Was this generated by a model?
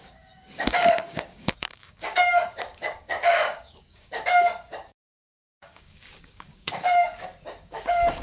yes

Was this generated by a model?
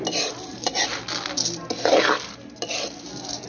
no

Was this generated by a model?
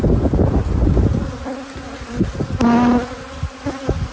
no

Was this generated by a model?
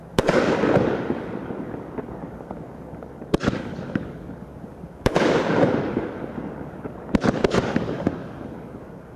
yes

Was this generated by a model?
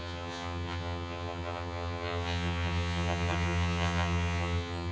yes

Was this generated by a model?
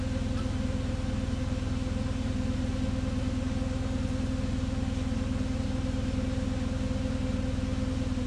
no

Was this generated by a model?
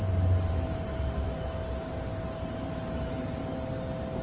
no